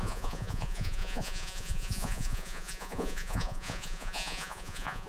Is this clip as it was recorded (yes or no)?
no